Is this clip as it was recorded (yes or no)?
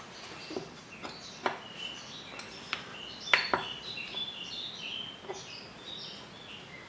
no